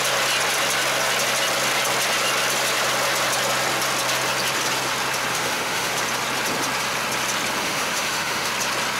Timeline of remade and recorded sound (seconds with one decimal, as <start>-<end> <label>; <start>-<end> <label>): 0.0-5.3 recorded; 5.3-5.9 remade; 5.9-7.6 recorded; 7.6-8.5 remade; 8.5-9.0 recorded